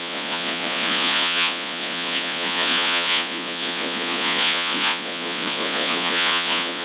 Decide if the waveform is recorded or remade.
remade